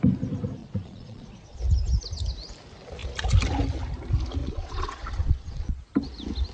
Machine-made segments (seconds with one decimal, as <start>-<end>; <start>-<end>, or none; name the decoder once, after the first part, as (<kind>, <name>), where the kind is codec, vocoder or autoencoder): 0.6-1.6 (vocoder, Vocos); 4.4-5.8